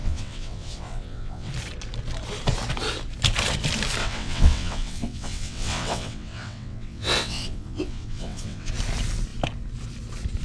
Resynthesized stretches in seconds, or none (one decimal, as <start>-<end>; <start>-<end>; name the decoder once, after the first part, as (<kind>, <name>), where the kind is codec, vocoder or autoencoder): 0.0-1.5 (vocoder, WaveNeXt); 4.0-8.7